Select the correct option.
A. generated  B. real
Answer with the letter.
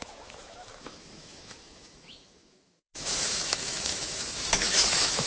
A